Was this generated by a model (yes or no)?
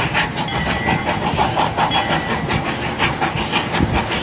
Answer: no